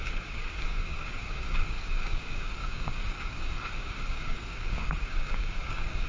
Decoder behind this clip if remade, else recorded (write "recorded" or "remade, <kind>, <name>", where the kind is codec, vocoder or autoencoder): remade, codec, DAC